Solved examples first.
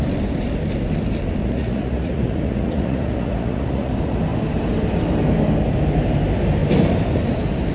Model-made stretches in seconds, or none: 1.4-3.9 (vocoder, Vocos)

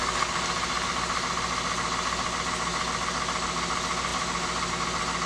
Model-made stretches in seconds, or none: none

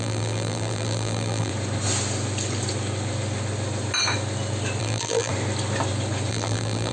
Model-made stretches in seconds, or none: 0.0-1.5 (vocoder, BigVGAN v2); 4.8-5.3; 6.3-6.9

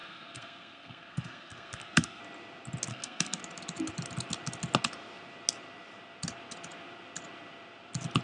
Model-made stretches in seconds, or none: 0.0-2.2 (codec, SNAC); 2.9-3.4

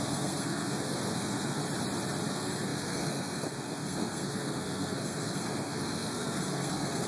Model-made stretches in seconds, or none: 0.0-1.6 (codec, SNAC); 2.3-7.1

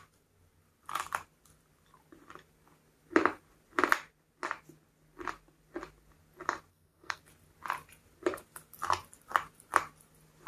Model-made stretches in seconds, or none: 6.7-7.2 (codec, SNAC)

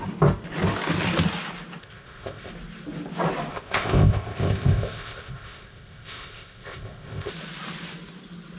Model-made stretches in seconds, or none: 1.8-2.5 (codec, ZipCodec); 3.5-7.3